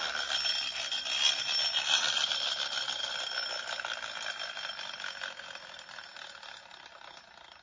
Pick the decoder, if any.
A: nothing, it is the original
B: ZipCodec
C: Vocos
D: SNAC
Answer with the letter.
A